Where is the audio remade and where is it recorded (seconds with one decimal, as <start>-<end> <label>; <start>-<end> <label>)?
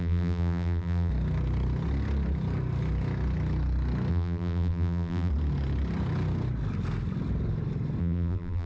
0.0-1.1 remade; 1.1-4.1 recorded; 4.1-5.3 remade; 5.3-8.0 recorded; 8.0-8.7 remade